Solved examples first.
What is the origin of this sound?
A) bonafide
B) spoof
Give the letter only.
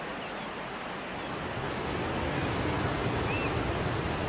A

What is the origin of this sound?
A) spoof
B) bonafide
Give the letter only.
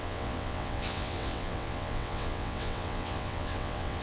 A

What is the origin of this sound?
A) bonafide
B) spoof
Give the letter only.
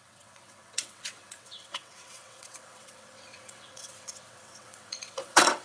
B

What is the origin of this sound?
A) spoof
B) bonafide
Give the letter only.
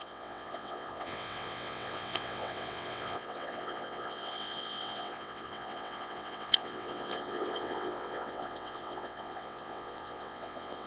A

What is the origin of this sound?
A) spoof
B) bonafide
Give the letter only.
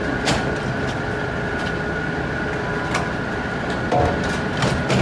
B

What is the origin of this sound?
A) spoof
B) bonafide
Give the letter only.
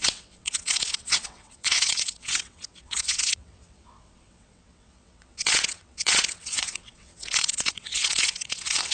A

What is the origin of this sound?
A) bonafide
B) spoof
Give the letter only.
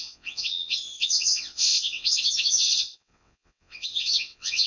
B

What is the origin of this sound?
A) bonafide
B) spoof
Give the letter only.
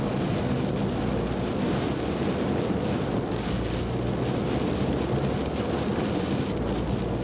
A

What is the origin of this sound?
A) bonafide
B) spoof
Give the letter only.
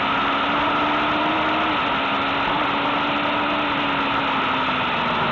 A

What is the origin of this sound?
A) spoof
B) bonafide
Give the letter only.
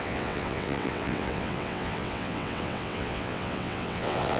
A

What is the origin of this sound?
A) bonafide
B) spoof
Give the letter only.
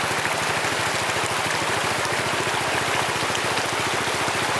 A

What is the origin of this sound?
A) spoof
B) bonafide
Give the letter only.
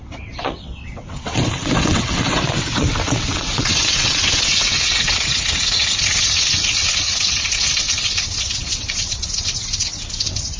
A